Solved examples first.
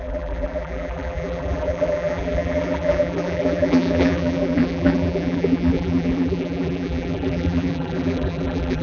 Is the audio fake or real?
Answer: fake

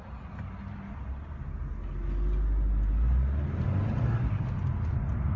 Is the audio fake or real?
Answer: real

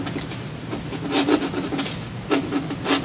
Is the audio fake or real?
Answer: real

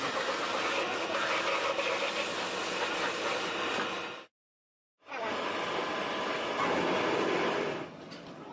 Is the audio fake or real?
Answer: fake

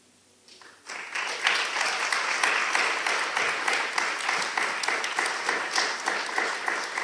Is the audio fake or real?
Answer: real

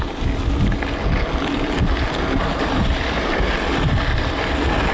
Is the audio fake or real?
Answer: real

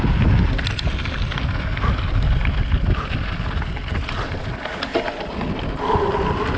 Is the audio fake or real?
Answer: real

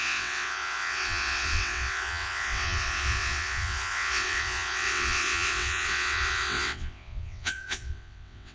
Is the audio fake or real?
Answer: fake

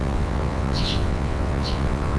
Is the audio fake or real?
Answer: fake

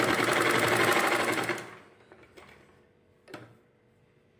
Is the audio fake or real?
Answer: real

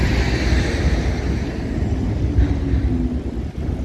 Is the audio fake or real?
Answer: real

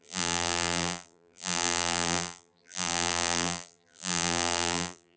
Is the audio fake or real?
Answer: fake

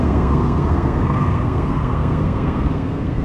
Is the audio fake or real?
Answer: fake